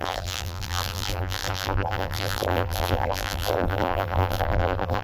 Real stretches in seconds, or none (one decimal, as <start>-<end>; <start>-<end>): none